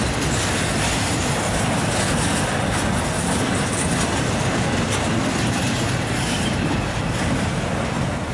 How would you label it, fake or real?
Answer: real